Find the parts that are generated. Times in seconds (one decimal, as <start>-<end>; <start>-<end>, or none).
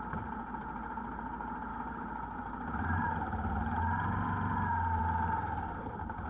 none